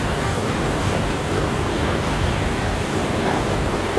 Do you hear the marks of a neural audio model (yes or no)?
yes